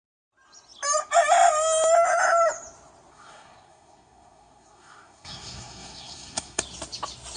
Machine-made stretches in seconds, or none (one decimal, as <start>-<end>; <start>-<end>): 3.1-6.6